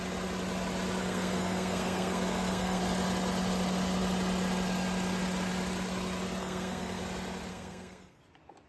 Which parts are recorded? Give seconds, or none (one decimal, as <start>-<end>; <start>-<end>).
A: 0.0-1.0; 2.8-6.4; 7.0-7.5; 8.2-8.7